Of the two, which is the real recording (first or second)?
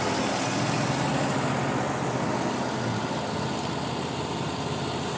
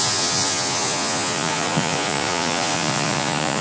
first